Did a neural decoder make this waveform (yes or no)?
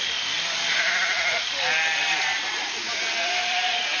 yes